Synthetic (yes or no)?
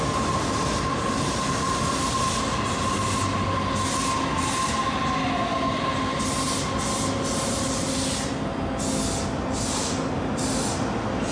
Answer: no